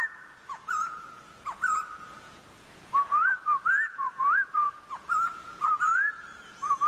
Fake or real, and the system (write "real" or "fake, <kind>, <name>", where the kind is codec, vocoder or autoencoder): fake, vocoder, Vocos